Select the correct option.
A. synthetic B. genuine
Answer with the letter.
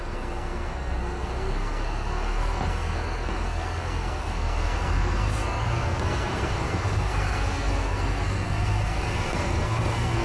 A